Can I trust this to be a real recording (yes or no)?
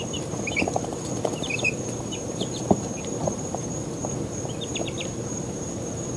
no